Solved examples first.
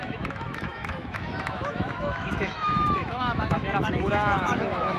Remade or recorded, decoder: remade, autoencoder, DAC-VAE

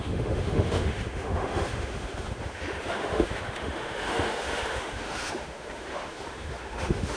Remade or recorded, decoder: remade, autoencoder, DAC-VAE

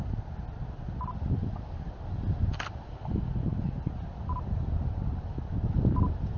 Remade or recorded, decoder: recorded